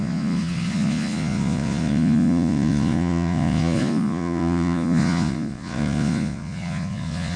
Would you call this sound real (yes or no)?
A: no